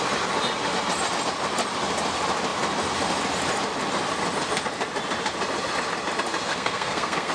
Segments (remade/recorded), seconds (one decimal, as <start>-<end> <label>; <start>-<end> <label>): 0.0-6.5 recorded; 6.5-7.3 remade